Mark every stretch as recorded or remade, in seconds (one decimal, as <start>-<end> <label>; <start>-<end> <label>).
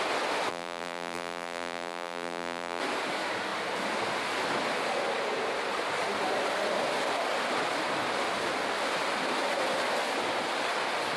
0.0-0.5 recorded; 0.5-2.8 remade; 2.8-11.2 recorded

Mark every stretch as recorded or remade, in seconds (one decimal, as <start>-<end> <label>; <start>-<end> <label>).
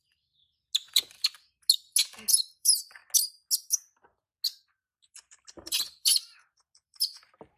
0.0-0.4 remade; 0.4-2.5 recorded; 2.5-3.0 remade; 3.0-4.7 recorded; 4.7-7.6 remade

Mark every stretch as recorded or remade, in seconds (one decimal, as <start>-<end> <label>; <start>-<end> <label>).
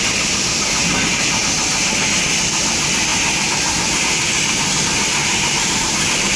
0.0-5.2 recorded; 5.2-5.8 remade; 5.8-6.4 recorded